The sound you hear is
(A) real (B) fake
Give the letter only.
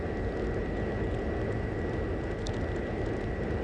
A